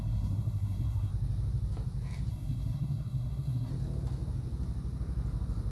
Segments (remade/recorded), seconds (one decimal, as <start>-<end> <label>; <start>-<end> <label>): 0.0-1.1 remade; 1.1-2.3 recorded; 2.3-3.7 remade; 3.7-5.7 recorded